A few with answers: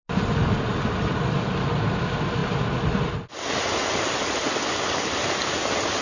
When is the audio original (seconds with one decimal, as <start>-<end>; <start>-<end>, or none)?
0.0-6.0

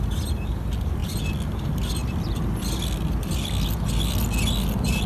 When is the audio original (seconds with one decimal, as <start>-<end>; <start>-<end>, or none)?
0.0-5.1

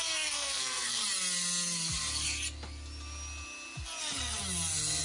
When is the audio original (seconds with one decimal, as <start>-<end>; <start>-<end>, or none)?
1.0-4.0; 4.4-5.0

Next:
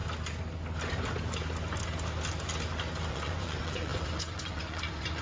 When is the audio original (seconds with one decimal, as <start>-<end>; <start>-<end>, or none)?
0.0-3.1